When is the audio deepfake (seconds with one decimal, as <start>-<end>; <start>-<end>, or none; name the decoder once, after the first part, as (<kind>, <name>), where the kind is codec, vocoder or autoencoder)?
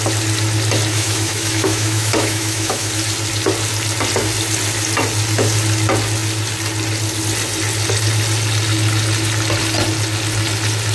0.9-2.9 (autoencoder, DAC-VAE)